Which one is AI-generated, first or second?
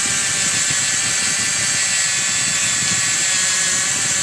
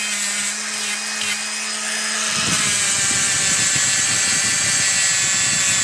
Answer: first